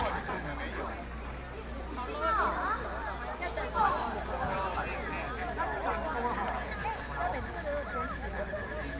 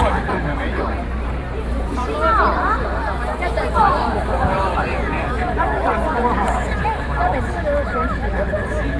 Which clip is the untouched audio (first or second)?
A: first